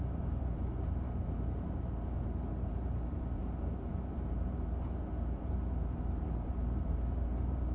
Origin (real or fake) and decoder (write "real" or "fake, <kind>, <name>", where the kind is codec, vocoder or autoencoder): fake, vocoder, BigVGAN v2